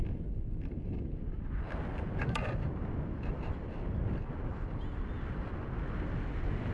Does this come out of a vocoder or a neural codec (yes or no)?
no